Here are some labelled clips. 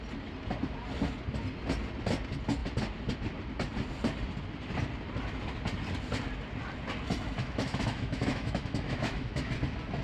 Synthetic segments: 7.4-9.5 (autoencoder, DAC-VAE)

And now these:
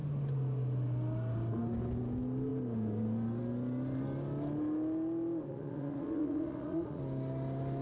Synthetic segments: 5.5-7.0 (vocoder, Vocos)

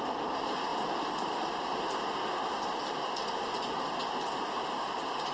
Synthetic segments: none

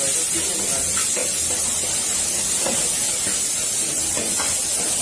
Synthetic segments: none

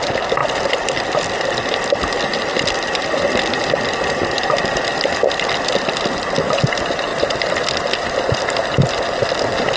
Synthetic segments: none

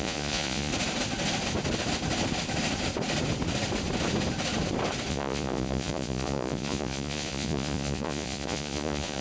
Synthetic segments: 0.0-0.7 (vocoder, Vocos); 5.1-9.2

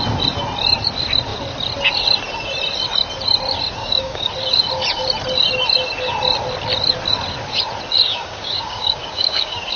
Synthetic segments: 3.8-4.3 (codec, DAC); 8.1-9.8